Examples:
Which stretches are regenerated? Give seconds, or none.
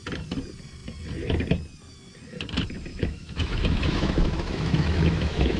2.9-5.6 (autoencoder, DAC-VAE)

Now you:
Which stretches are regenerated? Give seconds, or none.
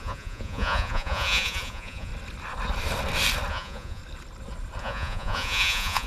0.0-2.1 (vocoder, Vocos); 3.5-4.0; 4.8-6.1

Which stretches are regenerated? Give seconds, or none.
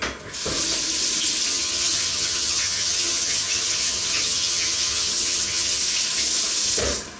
1.5-5.8 (vocoder, HiFi-GAN)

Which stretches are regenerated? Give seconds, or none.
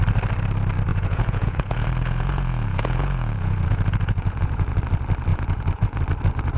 0.9-4.8 (vocoder, Vocos); 5.3-6.0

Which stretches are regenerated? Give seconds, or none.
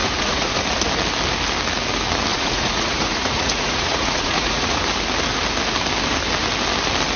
0.0-0.6 (vocoder, Vocos); 2.3-4.8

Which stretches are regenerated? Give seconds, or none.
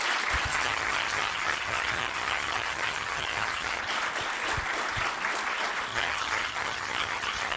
0.5-3.8 (vocoder, HiFi-GAN); 5.9-7.6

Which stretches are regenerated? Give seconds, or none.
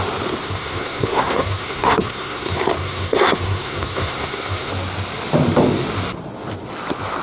0.4-4.7 (codec, SNAC)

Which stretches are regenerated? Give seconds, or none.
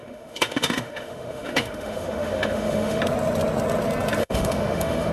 0.0-3.0 (autoencoder, DAC-VAE); 4.2-5.1